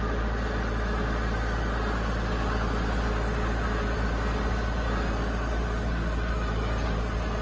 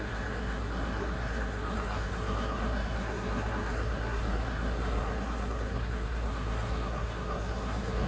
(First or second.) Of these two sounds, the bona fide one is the first